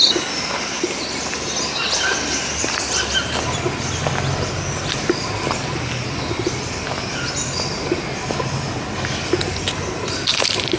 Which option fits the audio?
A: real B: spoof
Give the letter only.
A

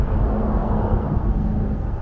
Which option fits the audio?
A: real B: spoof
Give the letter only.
B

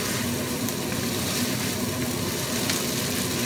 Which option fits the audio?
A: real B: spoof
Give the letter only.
A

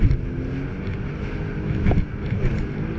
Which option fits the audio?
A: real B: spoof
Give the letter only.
A